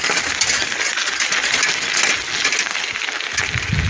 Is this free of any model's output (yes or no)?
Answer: yes